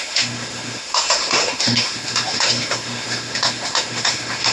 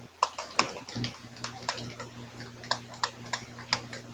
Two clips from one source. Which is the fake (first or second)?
first